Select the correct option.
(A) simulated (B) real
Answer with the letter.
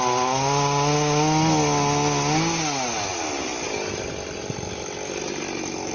B